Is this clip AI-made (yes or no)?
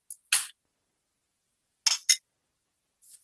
no